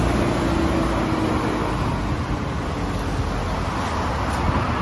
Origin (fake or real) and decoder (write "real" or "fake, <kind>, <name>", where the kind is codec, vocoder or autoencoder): real